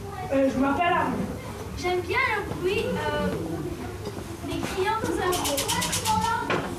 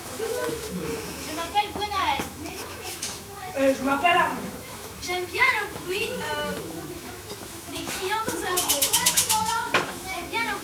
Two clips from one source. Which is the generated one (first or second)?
second